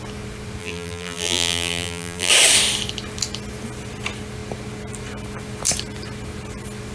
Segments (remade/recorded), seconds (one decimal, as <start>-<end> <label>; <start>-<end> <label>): 0.0-0.6 recorded; 0.6-2.3 remade; 2.3-6.9 recorded